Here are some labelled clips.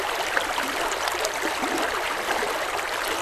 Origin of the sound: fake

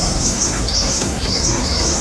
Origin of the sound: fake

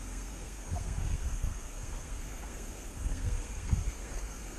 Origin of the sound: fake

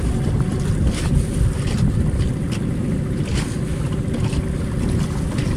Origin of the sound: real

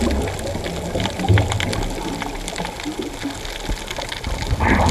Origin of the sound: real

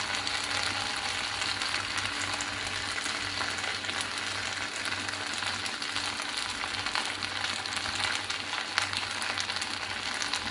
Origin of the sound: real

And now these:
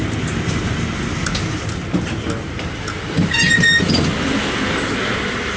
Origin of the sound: real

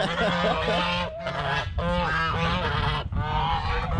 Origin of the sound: real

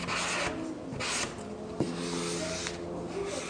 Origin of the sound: real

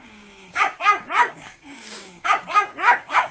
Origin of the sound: fake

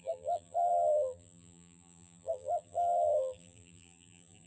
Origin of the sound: fake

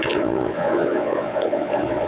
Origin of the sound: fake